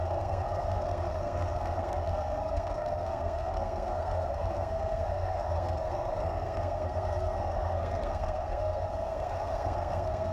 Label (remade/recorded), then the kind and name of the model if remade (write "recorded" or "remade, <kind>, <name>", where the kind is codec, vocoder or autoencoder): remade, codec, SNAC